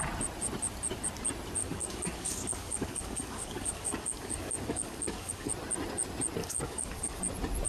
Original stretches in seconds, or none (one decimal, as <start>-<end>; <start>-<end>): 0.0-1.6; 5.5-6.4; 7.2-7.7